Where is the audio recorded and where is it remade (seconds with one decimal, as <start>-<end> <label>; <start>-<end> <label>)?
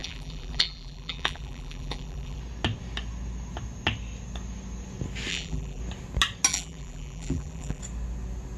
0.0-2.4 remade; 2.4-5.3 recorded; 5.3-5.8 remade; 5.8-6.5 recorded; 6.5-7.8 remade; 7.8-8.6 recorded